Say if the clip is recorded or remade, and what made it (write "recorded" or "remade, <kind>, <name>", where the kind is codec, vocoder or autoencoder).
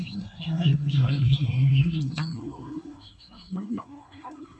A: remade, codec, SNAC